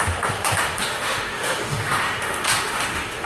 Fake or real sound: fake